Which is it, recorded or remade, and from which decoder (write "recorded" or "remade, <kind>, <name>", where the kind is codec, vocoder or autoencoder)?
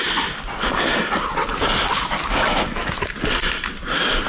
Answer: recorded